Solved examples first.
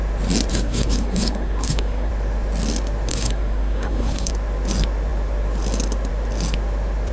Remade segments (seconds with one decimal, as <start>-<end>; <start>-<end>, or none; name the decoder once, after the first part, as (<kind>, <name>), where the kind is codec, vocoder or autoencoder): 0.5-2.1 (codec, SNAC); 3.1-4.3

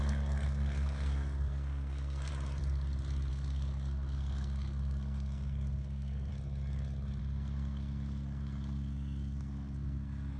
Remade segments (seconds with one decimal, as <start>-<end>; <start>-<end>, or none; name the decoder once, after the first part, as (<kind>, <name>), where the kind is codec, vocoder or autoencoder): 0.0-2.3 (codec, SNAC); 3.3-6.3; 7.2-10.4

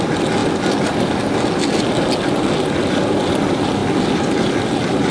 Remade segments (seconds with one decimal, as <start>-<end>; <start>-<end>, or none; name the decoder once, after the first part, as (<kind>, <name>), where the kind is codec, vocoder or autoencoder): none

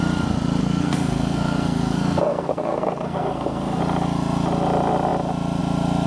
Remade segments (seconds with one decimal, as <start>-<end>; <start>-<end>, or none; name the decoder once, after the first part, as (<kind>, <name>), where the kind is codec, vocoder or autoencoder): 0.6-3.8 (codec, SNAC)

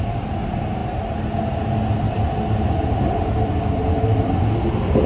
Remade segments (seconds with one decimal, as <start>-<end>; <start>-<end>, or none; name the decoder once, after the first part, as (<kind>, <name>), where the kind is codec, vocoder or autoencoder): none